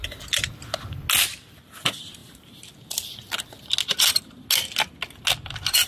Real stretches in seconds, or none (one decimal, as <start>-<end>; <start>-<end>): 0.0-5.9